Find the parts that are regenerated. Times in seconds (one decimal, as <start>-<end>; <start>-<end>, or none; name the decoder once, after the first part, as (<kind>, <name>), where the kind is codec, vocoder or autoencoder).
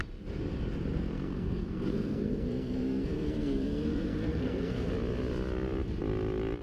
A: 0.9-4.9 (codec, SNAC)